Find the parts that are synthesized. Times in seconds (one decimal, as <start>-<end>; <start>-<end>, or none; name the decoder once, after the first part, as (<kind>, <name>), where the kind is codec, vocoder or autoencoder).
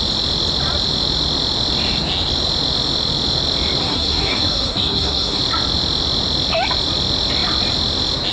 3.8-5.4 (codec, SNAC)